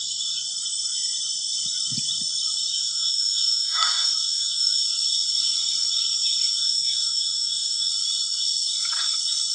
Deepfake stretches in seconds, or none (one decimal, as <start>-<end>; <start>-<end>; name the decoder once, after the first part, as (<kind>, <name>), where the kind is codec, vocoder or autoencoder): 2.7-4.8 (autoencoder, DAC-VAE); 6.6-7.9